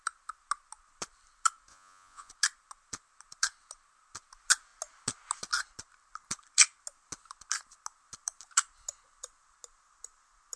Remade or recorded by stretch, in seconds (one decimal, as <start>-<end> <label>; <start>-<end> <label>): 0.0-1.7 recorded; 1.7-2.3 remade; 2.3-10.6 recorded